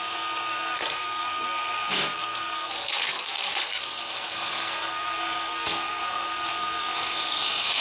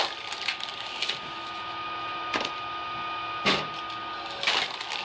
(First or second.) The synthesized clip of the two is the first